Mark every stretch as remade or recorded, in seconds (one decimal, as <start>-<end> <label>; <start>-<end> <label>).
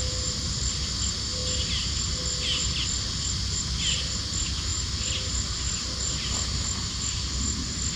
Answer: 0.0-8.0 recorded